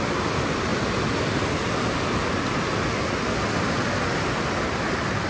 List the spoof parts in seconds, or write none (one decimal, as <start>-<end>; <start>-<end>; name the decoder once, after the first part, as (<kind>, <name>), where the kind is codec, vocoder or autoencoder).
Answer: none